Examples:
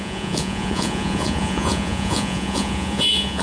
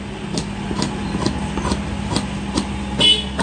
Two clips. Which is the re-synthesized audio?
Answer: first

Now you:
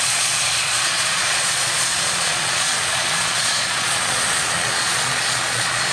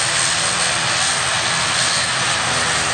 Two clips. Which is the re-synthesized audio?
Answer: first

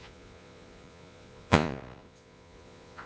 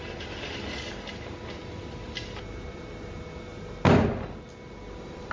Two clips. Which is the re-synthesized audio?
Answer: first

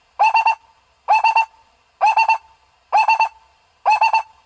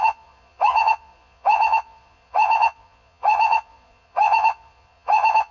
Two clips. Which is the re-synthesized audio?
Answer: second